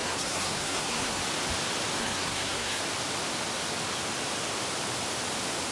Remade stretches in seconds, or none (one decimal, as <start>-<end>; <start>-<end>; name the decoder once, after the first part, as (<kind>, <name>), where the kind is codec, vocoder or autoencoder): 0.0-1.2 (codec, SNAC); 2.0-2.8